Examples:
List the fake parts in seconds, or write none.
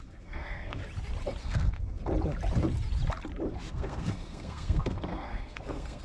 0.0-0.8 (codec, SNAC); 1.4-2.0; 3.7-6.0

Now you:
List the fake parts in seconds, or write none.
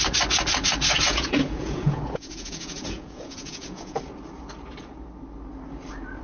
1.1-4.0 (vocoder, Vocos)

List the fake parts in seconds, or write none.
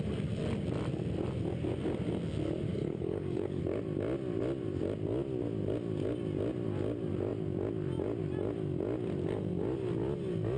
2.7-3.6 (codec, DAC)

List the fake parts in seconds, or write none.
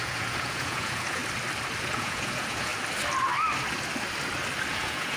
0.0-1.2 (vocoder, Vocos); 1.9-2.7; 4.7-5.2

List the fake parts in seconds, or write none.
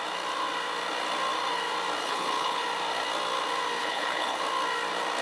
2.0-2.6 (codec, HILCodec); 3.8-4.4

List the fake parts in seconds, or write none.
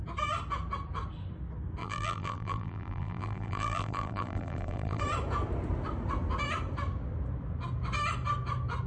1.8-5.0 (vocoder, BigVGAN v2)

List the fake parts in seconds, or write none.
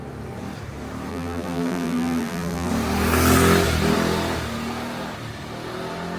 1.1-2.7 (vocoder, BigVGAN v2)